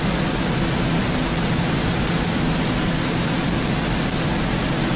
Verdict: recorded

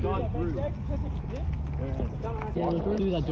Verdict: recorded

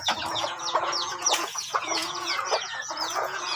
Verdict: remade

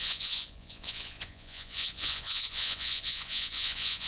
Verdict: remade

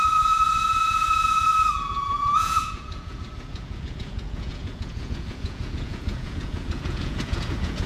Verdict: remade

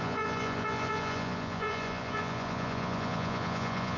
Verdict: remade